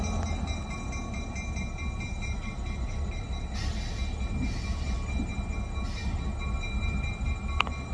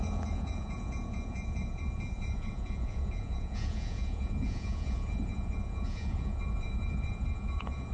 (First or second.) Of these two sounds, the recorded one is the first